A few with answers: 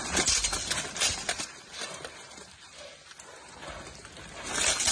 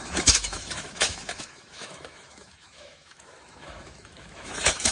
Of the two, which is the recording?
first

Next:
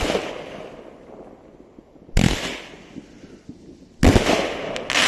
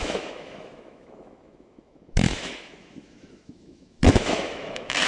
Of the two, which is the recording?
first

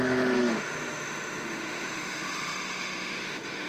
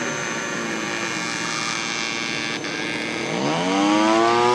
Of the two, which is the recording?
second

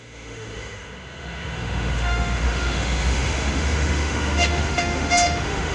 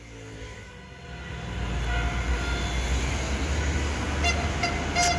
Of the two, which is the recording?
second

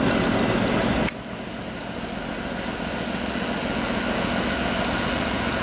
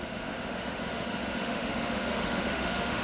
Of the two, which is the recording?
first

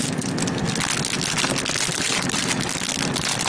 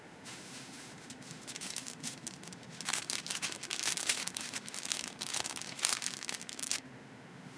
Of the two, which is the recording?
first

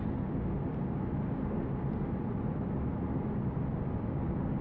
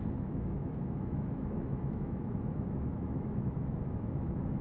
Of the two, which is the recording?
first